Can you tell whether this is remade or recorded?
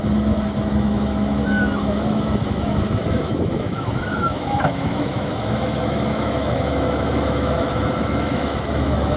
remade